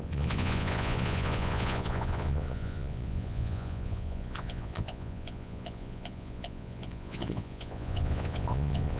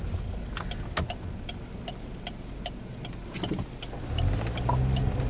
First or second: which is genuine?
second